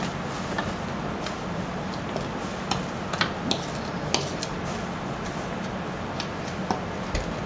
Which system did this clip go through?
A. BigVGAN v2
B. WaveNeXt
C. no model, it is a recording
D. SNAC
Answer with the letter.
C